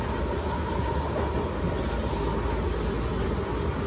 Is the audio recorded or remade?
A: recorded